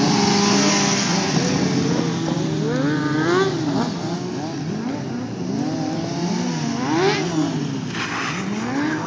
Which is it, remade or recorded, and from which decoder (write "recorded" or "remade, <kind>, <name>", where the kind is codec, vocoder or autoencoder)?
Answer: recorded